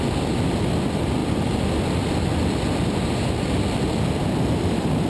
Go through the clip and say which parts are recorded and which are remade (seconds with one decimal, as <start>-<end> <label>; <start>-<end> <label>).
0.0-5.1 recorded

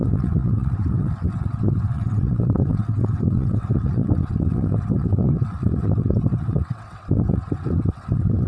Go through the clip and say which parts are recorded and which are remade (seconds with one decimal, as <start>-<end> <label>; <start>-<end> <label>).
0.0-8.5 remade